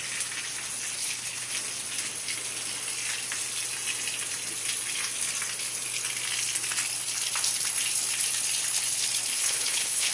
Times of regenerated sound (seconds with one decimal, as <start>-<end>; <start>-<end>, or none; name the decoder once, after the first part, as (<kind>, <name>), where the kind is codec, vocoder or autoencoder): 1.0-1.5 (codec, HILCodec); 9.3-10.1